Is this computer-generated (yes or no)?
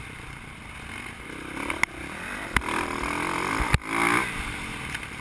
yes